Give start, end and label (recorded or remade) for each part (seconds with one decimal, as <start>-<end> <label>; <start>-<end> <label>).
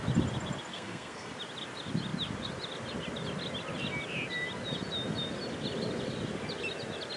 0.0-0.7 recorded; 0.7-1.3 remade; 1.3-7.2 recorded